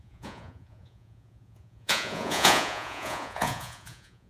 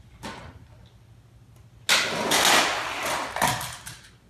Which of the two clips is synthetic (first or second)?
first